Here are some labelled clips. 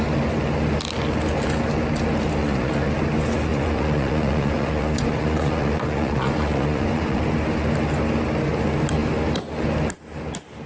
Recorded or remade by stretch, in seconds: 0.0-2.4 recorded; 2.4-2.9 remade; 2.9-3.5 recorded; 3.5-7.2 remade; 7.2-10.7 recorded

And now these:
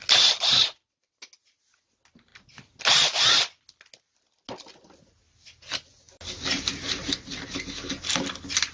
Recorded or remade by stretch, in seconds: 0.0-8.7 recorded

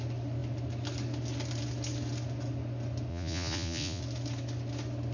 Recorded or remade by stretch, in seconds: 0.0-3.1 recorded; 3.1-4.0 remade; 4.0-5.1 recorded

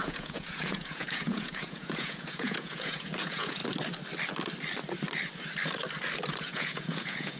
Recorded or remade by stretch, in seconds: 0.0-3.6 remade; 3.6-6.4 recorded; 6.4-7.4 remade

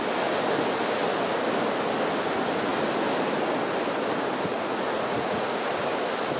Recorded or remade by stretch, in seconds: 0.0-4.5 recorded; 4.5-5.7 remade; 5.7-6.4 recorded

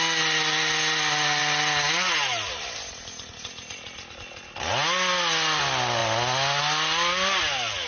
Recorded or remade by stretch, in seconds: 0.0-7.9 recorded